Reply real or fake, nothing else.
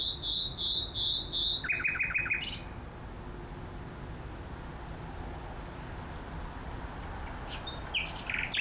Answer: real